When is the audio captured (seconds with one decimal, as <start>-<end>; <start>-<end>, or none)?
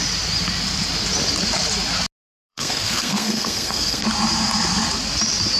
0.0-2.5; 4.0-5.6